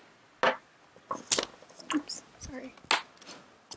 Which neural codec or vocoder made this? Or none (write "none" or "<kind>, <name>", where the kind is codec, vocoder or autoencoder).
none